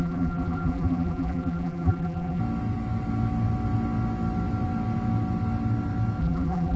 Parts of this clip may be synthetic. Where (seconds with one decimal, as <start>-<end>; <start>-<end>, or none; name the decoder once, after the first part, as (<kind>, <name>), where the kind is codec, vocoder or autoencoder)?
0.0-2.4 (vocoder, BigVGAN v2); 6.2-6.8